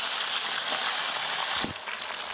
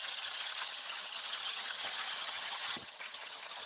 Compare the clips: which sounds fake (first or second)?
second